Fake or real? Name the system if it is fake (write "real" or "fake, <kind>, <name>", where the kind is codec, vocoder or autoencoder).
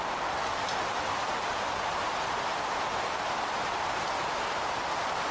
real